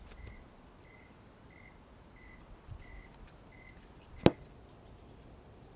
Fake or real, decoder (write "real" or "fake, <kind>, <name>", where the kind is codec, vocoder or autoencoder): real